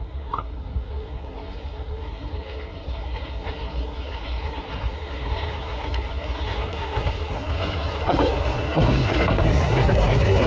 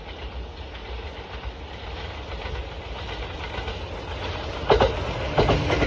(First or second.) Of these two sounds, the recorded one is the second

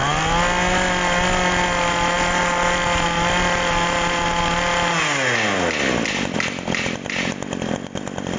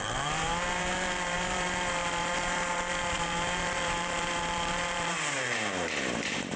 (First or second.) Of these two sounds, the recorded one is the first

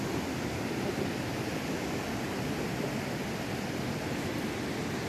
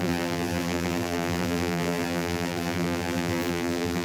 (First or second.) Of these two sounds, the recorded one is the first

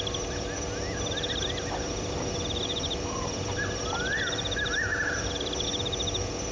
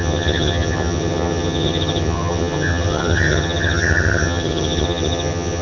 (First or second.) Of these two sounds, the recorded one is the first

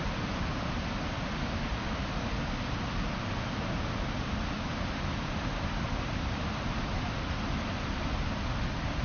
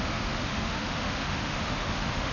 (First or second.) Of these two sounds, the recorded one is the first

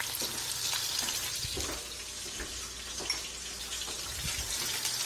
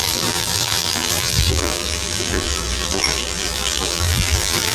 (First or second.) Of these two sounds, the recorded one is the first